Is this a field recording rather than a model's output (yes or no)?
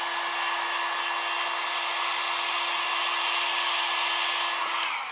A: yes